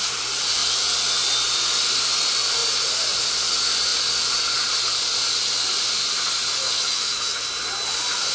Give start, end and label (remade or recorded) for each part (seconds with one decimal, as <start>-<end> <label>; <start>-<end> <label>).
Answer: 0.0-6.6 recorded; 6.6-7.4 remade; 7.4-8.3 recorded

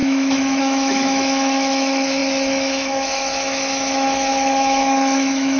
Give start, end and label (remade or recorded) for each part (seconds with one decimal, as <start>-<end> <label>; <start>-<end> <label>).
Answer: 0.0-5.6 remade

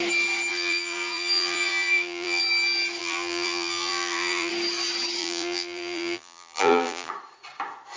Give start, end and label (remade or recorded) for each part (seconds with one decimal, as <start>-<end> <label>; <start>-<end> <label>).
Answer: 0.0-0.5 recorded; 0.5-2.4 remade; 2.4-3.0 recorded; 3.0-4.5 remade; 4.5-5.2 recorded; 5.2-7.1 remade; 7.1-8.0 recorded

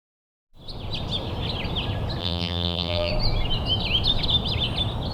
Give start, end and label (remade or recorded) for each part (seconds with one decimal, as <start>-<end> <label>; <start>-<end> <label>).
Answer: 0.0-2.2 recorded; 2.2-3.1 remade; 3.1-5.1 recorded

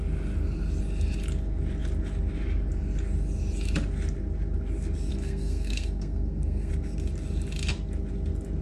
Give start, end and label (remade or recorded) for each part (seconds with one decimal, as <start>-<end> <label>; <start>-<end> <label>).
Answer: 0.0-5.1 recorded; 5.1-6.7 remade; 6.7-8.6 recorded